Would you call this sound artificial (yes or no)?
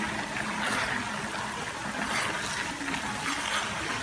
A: no